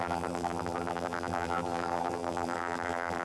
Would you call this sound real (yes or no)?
no